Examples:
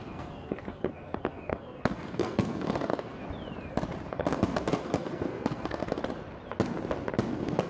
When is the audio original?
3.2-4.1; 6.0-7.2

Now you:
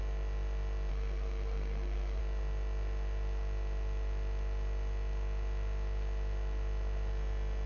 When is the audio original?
0.0-0.9; 2.2-7.7